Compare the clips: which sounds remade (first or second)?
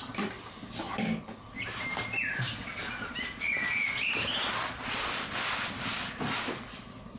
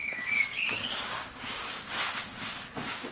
second